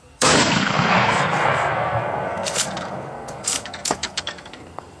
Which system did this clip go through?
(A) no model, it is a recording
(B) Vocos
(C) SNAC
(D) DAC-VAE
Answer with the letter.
C